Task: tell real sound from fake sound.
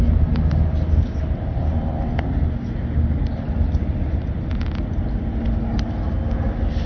real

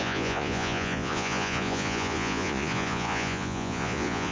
fake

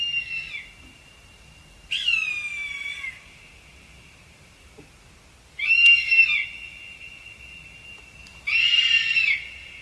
real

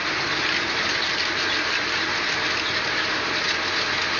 real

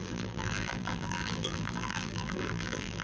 fake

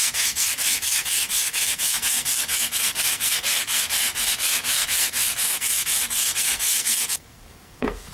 fake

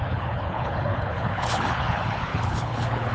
fake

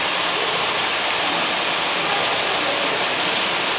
real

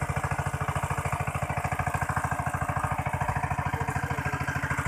real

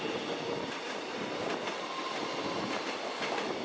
real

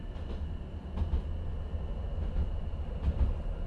real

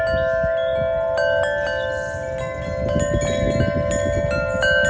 real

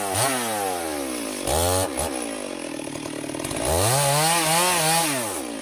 real